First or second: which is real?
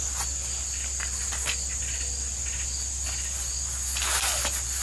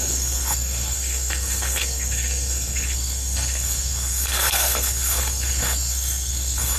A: first